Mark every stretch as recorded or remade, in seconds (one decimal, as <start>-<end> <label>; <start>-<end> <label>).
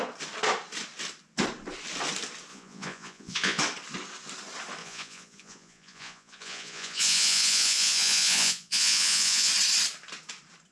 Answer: 0.0-2.5 recorded; 2.5-3.6 remade; 3.6-4.8 recorded; 4.8-9.5 remade; 9.5-10.7 recorded